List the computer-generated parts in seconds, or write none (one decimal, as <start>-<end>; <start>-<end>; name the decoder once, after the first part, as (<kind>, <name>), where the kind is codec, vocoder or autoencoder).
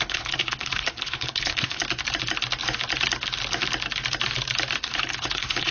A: 0.0-1.8 (codec, HILCodec); 4.8-5.7